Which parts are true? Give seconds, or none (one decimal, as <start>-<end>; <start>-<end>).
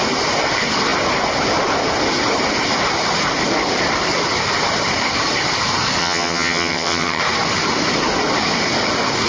0.0-6.0; 7.2-9.3